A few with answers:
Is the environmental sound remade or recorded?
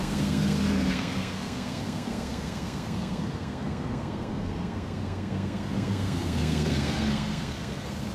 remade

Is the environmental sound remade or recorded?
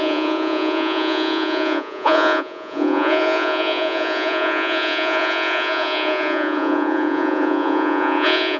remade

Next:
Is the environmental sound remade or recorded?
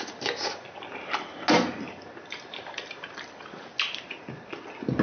recorded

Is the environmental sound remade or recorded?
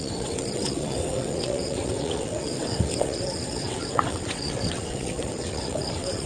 remade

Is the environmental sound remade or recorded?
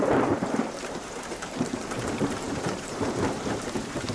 remade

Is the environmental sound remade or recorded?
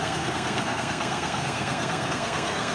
remade